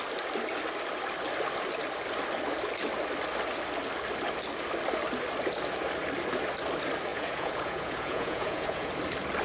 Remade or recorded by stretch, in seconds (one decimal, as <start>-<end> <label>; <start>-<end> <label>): 0.0-7.1 recorded; 7.1-8.9 remade; 8.9-9.4 recorded

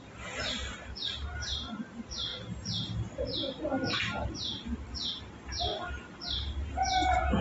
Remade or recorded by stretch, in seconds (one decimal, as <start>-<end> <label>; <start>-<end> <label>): 0.0-7.4 recorded